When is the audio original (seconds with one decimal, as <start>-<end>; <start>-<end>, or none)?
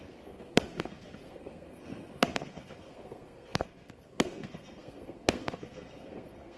none